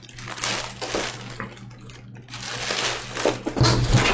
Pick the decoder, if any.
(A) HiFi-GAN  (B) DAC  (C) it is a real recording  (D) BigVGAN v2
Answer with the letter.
C